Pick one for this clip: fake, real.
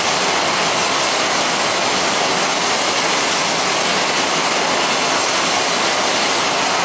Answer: real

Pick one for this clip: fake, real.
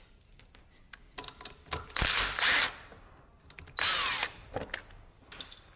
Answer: real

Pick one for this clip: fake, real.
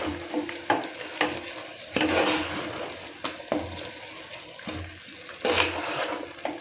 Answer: real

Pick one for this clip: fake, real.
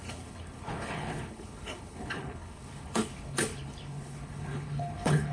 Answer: fake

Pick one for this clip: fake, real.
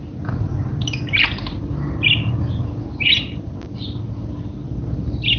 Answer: real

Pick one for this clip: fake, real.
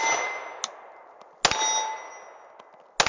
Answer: real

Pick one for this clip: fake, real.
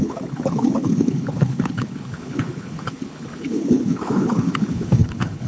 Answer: fake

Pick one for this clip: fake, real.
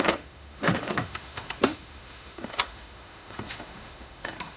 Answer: fake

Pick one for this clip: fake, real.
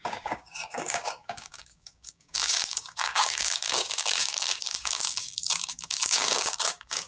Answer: fake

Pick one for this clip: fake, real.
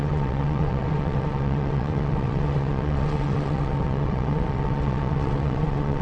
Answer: fake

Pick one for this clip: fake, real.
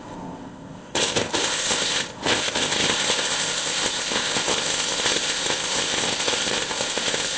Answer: fake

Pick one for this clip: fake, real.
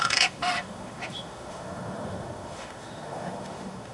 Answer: fake